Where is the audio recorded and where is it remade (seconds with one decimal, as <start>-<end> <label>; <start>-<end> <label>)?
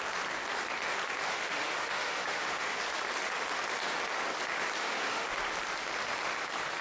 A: 0.0-1.2 recorded; 1.2-2.8 remade; 2.8-4.8 recorded; 4.8-5.3 remade; 5.3-6.8 recorded